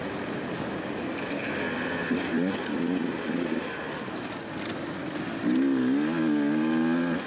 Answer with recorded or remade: recorded